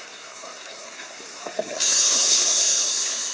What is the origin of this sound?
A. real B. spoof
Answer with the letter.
B